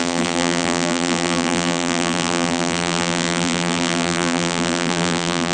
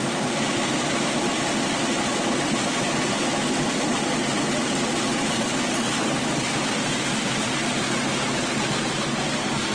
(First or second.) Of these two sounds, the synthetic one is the first